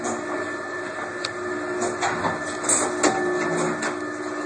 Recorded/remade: recorded